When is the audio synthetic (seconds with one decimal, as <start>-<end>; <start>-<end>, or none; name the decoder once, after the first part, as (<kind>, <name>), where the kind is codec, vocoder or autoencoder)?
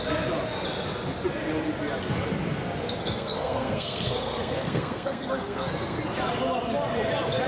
3.0-6.0 (codec, SNAC)